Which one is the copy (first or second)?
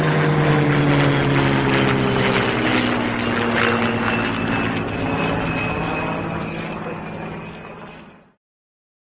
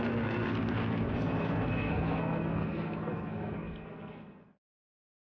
second